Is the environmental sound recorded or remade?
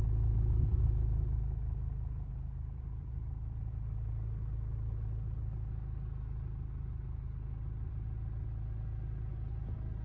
remade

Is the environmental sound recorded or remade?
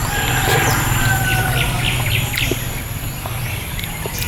remade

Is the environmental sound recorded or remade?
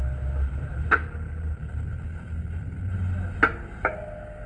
recorded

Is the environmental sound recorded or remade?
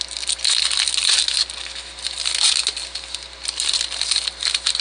recorded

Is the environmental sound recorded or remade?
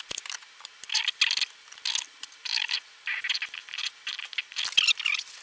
recorded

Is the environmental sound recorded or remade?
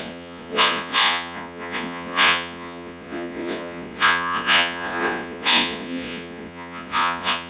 remade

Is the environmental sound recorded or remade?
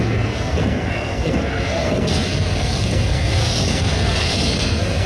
remade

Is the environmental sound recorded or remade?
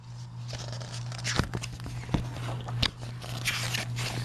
recorded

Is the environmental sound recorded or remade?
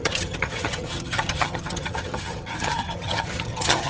remade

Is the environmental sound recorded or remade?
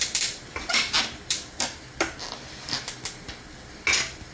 recorded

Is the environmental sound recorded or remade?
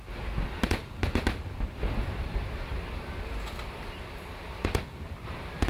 recorded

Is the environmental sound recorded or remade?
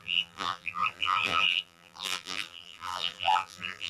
remade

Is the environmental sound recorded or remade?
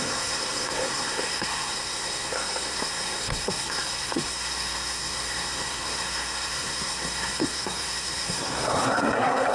remade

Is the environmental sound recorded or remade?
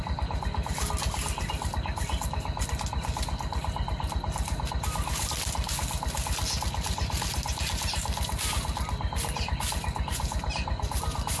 recorded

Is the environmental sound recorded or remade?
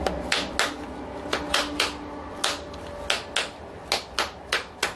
recorded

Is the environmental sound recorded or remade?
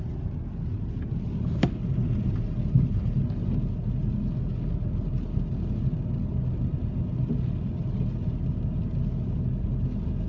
recorded